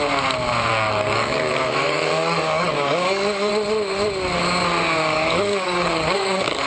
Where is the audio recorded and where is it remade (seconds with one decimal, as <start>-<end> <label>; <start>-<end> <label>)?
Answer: 0.0-0.7 recorded; 0.7-3.5 remade; 3.5-5.0 recorded; 5.0-6.7 remade